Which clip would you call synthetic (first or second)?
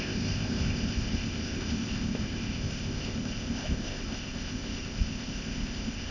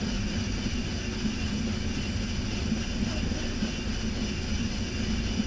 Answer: first